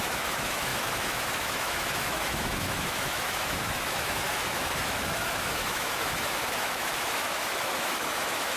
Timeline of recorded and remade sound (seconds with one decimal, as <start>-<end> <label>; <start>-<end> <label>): 0.0-8.6 remade